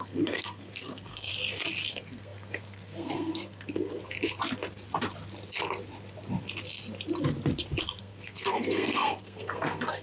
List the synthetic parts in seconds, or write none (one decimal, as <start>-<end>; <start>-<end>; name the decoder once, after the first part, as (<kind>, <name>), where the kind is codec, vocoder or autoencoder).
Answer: 0.0-1.3 (codec, SNAC); 1.9-4.0; 8.0-10.0